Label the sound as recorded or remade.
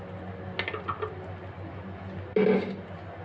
recorded